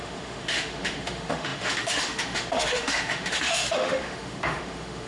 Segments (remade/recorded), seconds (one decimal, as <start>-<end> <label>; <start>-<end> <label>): 0.0-5.1 remade